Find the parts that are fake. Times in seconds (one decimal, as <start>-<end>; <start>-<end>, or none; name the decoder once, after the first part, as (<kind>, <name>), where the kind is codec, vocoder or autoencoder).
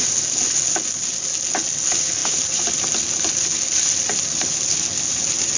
2.2-2.7 (vocoder, BigVGAN v2)